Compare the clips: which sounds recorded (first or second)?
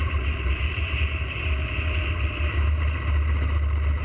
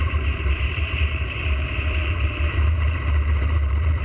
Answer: first